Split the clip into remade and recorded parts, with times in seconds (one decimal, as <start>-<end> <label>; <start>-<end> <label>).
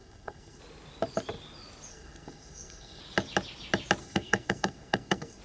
0.0-0.6 remade; 0.6-1.9 recorded; 1.9-3.0 remade; 3.0-4.0 recorded; 4.0-5.4 remade